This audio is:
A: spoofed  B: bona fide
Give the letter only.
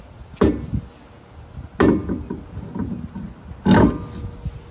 B